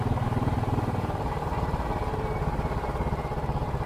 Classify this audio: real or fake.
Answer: real